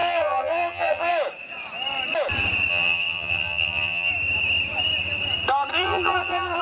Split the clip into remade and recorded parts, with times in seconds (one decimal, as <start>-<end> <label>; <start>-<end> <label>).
0.0-1.1 remade; 1.1-2.7 recorded; 2.7-4.1 remade; 4.1-5.7 recorded; 5.7-6.6 remade